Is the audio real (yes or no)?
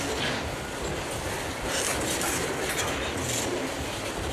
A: yes